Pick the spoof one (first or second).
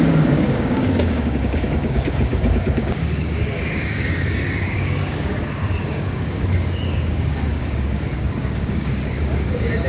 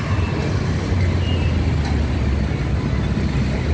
first